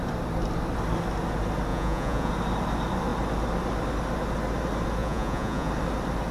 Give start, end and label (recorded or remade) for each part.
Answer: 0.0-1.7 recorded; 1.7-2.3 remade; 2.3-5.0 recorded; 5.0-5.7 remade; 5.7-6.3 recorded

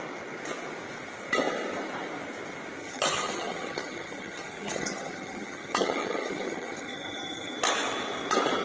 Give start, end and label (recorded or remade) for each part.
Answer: 0.0-2.8 recorded; 2.8-7.5 remade; 7.5-8.6 recorded